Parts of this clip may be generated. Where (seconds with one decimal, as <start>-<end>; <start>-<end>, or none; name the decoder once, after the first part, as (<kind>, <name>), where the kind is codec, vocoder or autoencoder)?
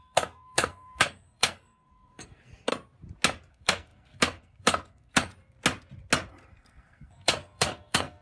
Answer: 0.0-2.7 (codec, SNAC); 3.5-5.3; 6.5-8.2